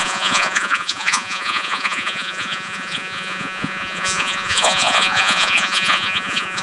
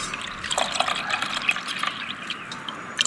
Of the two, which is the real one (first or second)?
second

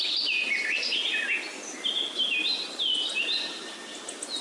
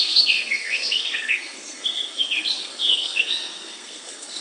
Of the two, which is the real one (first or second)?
first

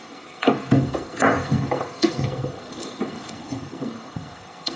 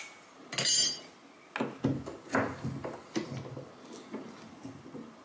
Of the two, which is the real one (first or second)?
second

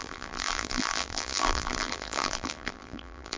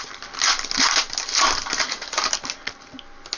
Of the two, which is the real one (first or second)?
second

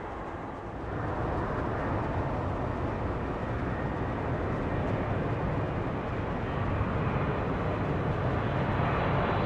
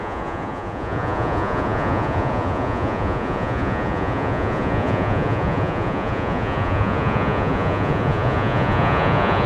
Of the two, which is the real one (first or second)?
first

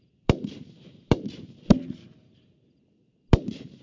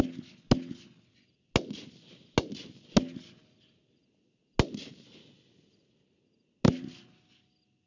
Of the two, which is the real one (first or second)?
second